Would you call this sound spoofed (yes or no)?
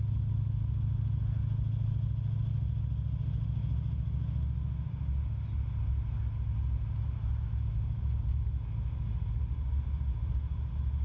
no